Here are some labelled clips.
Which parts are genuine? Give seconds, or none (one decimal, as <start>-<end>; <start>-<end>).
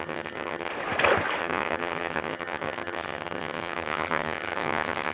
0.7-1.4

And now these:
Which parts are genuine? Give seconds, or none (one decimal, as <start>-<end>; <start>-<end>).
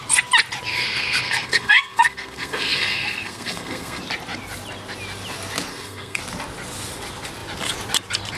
0.0-0.7; 4.0-5.7; 6.2-8.4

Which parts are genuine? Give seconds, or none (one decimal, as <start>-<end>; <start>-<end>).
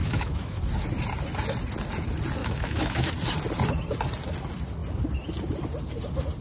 0.6-2.4; 3.1-6.4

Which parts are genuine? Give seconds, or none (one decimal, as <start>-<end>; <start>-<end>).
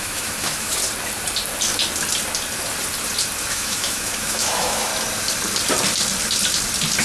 0.8-3.5; 4.9-7.0